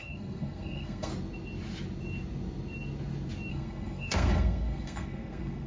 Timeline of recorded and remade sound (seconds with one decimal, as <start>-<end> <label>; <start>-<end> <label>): 0.0-1.1 remade; 1.1-3.5 recorded; 3.5-5.7 remade